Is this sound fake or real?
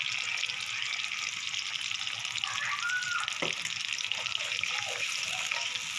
real